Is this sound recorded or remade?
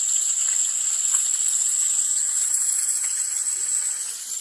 remade